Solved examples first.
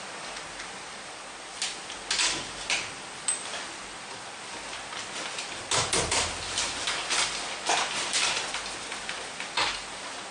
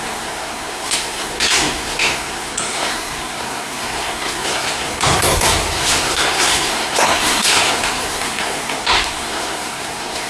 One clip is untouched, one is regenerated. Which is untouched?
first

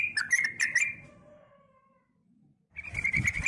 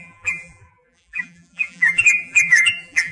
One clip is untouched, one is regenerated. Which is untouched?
first